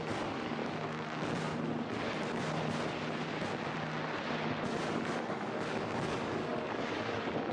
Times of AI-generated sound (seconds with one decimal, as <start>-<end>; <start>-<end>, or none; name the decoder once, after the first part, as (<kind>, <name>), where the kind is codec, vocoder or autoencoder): 0.0-0.6 (codec, DAC); 4.9-7.5